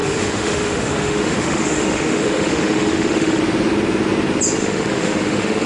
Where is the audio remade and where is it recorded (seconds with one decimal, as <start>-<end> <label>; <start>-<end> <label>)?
0.0-3.4 remade; 3.4-4.6 recorded; 4.6-5.7 remade